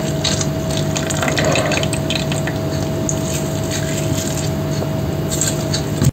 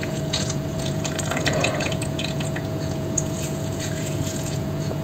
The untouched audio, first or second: first